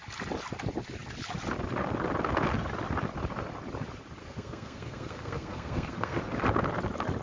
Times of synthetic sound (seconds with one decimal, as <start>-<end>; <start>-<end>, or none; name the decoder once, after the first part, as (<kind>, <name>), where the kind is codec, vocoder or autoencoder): 4.2-6.2 (codec, SNAC)